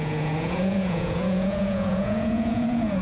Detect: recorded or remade remade